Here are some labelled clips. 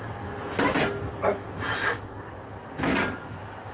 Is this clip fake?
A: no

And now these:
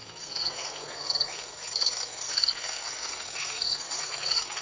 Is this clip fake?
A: yes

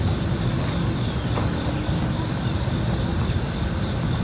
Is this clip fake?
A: no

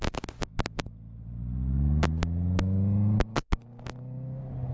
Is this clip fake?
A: no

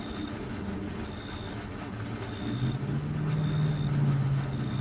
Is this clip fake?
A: no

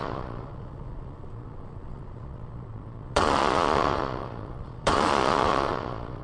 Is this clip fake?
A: yes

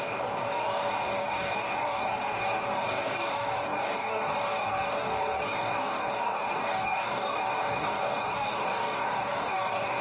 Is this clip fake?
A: yes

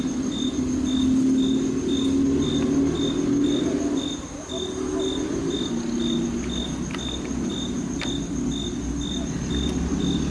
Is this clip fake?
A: no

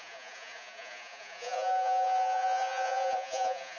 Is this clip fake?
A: yes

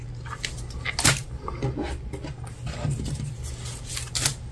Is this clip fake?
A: no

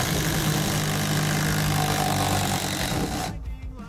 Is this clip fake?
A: no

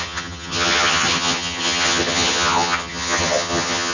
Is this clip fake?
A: yes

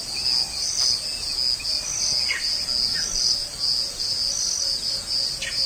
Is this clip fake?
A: no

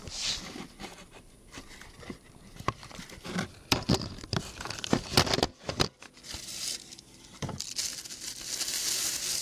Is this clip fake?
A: yes